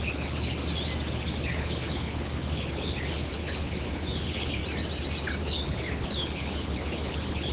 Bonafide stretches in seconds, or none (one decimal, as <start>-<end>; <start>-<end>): 0.6-1.1; 4.6-5.4